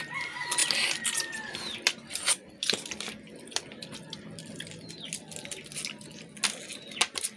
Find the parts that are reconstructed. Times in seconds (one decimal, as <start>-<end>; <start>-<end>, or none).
0.6-4.0